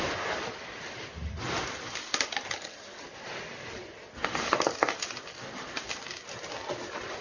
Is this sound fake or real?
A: real